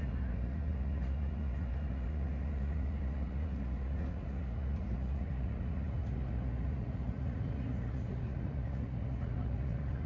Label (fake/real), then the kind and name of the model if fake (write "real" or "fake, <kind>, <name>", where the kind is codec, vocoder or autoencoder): fake, vocoder, Vocos